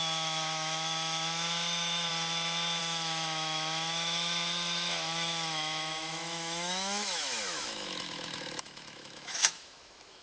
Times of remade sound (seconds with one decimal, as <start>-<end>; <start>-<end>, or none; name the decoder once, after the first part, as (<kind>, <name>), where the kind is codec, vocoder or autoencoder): 0.0-2.1 (autoencoder, DAC-VAE); 2.8-10.2